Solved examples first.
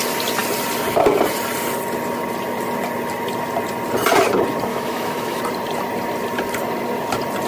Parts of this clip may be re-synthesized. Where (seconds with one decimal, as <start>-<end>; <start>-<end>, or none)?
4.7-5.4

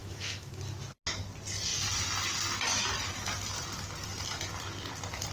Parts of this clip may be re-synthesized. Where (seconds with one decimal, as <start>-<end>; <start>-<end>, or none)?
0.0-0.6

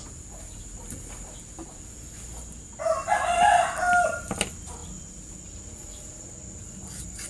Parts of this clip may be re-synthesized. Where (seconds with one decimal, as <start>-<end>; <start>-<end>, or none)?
none

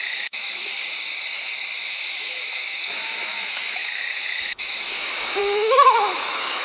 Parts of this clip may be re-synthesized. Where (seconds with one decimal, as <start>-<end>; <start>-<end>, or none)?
0.0-0.7; 1.8-6.6

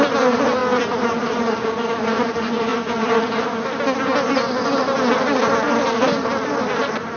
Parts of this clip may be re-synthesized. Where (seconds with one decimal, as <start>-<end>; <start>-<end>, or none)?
none